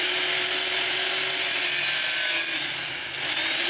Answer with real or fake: real